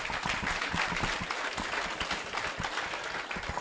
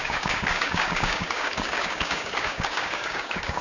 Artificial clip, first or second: second